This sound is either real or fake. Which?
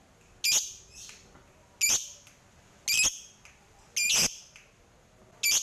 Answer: real